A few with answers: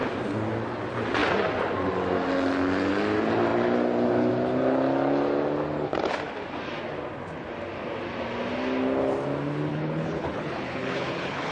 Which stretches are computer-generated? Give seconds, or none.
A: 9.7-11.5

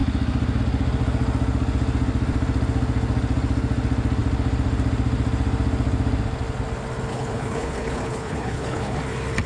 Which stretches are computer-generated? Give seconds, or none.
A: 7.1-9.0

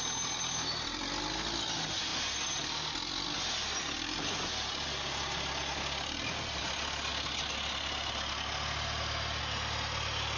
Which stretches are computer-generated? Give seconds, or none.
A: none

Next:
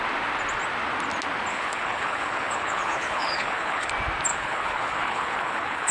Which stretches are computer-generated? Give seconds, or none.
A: 1.5-3.9; 4.3-5.9

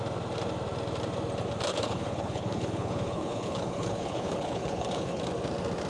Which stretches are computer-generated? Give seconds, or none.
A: 1.7-5.2

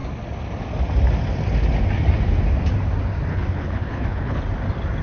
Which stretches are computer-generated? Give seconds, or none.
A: 3.3-4.4

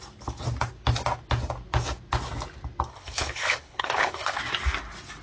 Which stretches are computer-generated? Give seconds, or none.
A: 2.9-4.4